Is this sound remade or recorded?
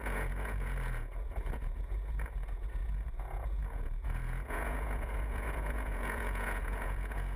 remade